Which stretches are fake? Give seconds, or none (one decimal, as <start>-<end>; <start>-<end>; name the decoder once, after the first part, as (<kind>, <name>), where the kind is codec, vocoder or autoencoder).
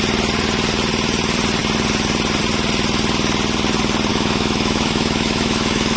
4.1-6.0 (autoencoder, DAC-VAE)